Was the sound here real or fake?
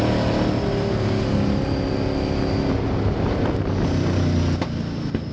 real